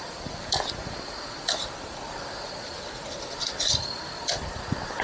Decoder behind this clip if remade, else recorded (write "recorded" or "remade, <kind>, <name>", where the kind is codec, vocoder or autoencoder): recorded